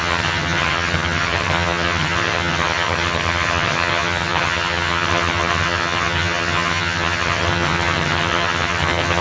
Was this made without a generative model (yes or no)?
no